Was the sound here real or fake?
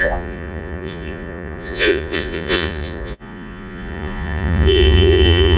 fake